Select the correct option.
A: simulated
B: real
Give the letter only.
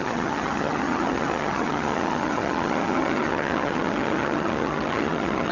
A